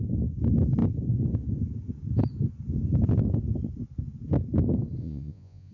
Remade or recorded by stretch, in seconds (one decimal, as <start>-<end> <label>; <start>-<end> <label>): 0.0-5.0 recorded; 5.0-5.7 remade